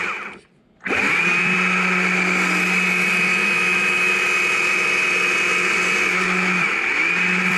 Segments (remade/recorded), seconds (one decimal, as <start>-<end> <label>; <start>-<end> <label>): 0.0-3.4 recorded; 3.4-4.1 remade; 4.1-7.6 recorded